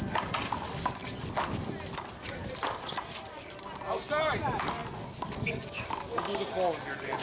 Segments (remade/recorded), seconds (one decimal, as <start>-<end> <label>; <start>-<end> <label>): 0.0-7.2 recorded